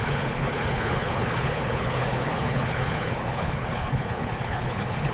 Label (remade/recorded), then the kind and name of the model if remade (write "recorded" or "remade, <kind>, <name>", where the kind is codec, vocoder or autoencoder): remade, codec, HILCodec